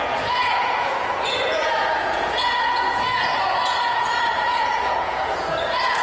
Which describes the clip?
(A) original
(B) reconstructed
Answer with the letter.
B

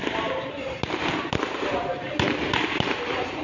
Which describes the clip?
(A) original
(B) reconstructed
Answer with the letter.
A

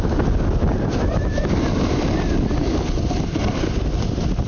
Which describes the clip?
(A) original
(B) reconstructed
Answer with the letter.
A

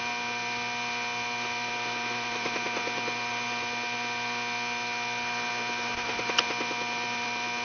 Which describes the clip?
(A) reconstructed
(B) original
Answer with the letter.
B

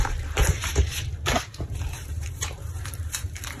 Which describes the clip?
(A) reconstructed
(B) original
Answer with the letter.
A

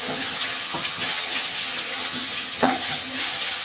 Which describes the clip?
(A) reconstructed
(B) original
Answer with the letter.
A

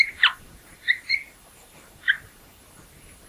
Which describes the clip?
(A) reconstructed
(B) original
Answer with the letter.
A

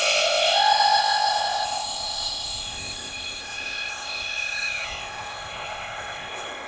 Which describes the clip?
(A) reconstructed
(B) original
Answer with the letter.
A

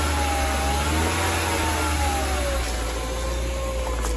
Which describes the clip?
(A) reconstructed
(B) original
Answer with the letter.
B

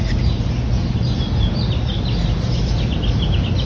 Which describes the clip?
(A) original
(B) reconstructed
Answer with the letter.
A